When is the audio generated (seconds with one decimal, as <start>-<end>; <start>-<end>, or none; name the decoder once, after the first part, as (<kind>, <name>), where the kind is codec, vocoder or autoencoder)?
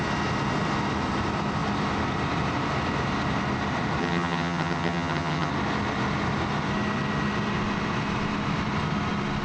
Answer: 4.0-5.5 (vocoder, HiFi-GAN)